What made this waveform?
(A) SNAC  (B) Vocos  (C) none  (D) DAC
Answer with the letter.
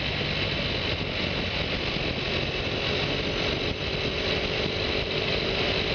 C